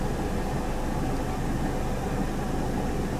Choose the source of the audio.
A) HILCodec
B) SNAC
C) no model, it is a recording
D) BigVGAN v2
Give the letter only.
C